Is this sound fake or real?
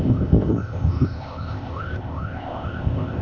fake